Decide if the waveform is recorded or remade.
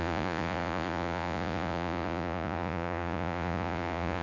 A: remade